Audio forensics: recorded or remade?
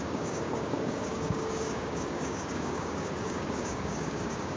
remade